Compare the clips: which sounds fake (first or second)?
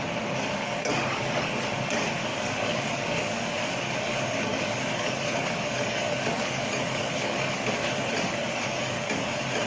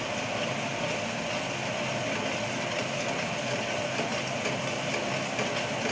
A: first